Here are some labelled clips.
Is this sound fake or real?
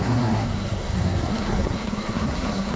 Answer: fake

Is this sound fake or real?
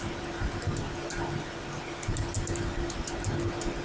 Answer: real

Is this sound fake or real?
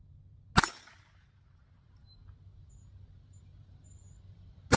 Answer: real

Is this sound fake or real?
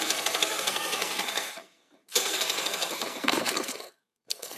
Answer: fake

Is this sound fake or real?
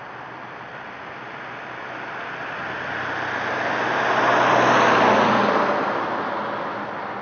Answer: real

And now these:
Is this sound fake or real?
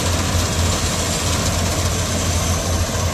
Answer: real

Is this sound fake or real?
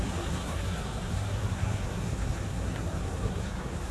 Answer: fake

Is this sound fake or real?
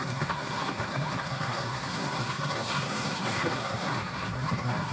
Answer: fake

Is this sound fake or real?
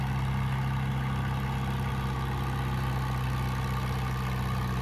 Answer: real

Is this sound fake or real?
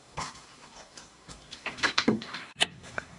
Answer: fake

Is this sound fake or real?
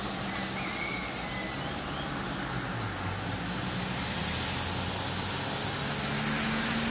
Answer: real